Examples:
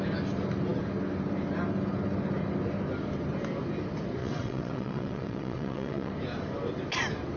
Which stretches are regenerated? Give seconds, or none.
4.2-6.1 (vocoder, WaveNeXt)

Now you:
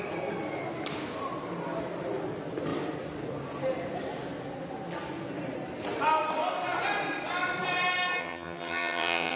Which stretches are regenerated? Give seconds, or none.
8.2-9.4 (vocoder, HiFi-GAN)

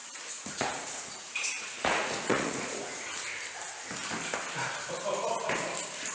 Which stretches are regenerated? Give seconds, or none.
0.0-3.1 (vocoder, Vocos)

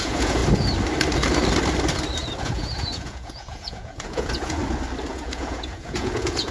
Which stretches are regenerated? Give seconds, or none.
0.0-0.4 (vocoder, Vocos); 2.4-4.6; 5.1-6.5

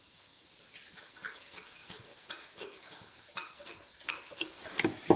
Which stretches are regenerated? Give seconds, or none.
0.0-0.5 (codec, SNAC); 1.0-4.6